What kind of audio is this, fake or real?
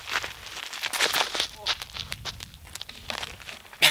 real